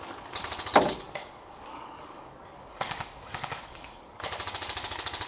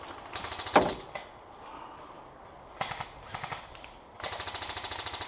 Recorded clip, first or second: second